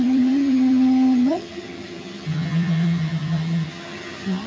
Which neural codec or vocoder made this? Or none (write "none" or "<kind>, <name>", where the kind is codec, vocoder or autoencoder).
vocoder, HiFi-GAN